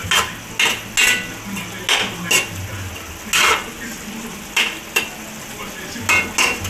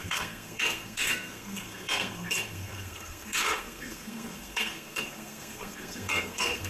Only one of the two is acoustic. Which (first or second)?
first